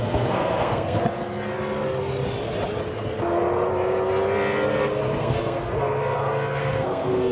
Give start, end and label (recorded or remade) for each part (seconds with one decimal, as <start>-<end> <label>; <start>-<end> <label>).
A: 0.0-1.0 remade; 1.0-5.2 recorded; 5.2-6.0 remade; 6.0-6.6 recorded; 6.6-7.3 remade